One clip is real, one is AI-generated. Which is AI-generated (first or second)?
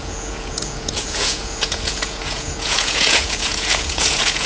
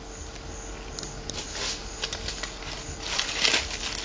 first